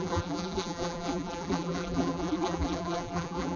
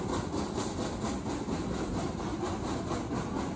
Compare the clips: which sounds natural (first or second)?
second